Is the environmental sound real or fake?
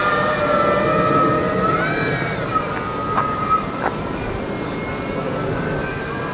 real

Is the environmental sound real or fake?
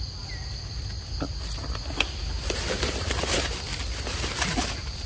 real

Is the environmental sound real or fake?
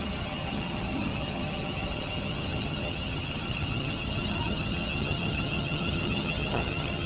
fake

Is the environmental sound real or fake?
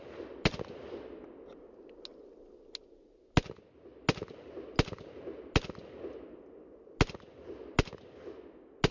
real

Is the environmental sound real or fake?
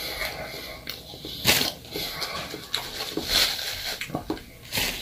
real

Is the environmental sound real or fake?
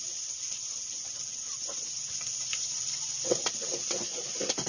real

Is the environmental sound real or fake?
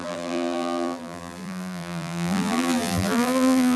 fake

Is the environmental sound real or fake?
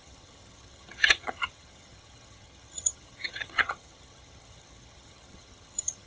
fake